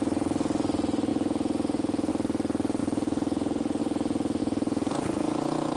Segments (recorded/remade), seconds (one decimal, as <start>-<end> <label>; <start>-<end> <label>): 0.0-1.1 recorded; 1.1-2.1 remade; 2.1-2.8 recorded; 2.8-3.8 remade; 3.8-4.4 recorded; 4.4-5.8 remade